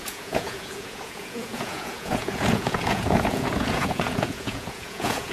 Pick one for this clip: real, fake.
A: fake